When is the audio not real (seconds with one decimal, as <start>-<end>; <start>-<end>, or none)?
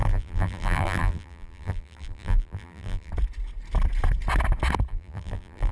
0.0-3.1; 4.9-5.7